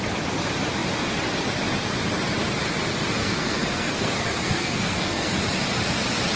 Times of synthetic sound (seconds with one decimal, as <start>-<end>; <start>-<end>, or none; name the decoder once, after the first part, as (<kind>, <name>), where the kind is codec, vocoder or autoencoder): 3.2-5.3 (codec, SNAC)

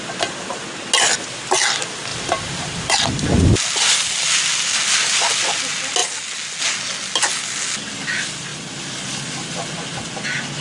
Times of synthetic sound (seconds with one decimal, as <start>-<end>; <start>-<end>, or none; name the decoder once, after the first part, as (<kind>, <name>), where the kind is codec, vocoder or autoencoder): 2.1-2.9 (vocoder, BigVGAN v2)

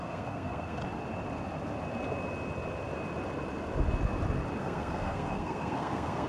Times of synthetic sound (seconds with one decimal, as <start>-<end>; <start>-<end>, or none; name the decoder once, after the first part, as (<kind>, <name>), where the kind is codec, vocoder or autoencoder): 0.0-0.8 (codec, SNAC); 4.6-6.3

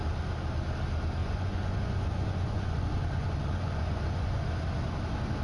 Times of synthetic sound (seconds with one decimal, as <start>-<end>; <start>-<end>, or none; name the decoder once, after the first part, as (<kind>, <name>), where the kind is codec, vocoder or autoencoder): 1.2-4.4 (vocoder, Vocos)

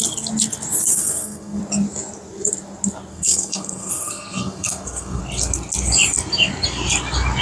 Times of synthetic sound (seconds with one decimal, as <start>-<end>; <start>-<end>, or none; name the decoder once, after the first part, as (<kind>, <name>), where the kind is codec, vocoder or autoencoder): 0.9-1.6 (codec, SNAC); 3.1-5.2

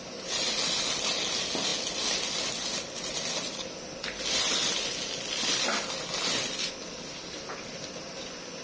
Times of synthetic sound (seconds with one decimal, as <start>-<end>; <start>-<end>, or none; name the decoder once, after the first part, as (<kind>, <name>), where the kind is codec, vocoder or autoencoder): none

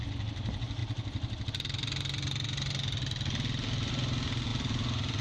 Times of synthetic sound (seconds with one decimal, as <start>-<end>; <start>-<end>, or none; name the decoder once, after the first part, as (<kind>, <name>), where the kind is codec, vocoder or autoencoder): none